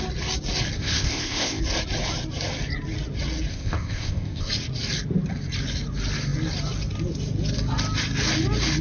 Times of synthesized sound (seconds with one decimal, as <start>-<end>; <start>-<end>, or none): 0.8-1.6; 3.5-4.5